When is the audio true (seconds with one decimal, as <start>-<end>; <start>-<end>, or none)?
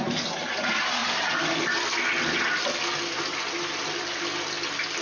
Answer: 0.0-5.0